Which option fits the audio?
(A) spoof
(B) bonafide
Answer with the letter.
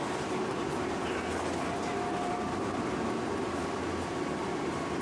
B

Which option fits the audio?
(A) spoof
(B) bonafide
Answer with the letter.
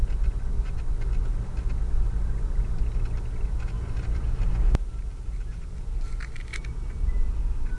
B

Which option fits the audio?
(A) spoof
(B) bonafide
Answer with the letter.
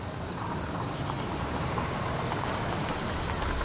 A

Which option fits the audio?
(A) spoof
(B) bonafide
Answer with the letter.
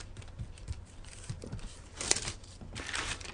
A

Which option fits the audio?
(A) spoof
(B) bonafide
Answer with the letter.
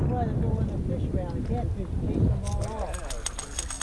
B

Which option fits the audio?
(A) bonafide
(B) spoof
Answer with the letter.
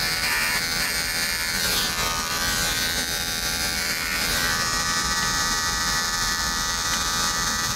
B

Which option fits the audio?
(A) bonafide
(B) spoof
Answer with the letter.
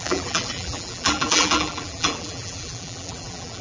B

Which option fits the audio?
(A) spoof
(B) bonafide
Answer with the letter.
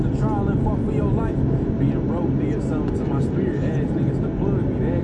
B